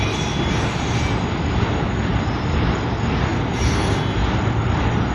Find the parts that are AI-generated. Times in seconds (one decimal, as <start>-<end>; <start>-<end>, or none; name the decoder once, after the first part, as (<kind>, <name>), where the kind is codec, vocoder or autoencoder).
none